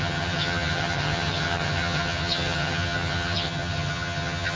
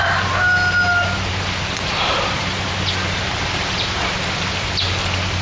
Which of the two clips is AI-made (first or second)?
first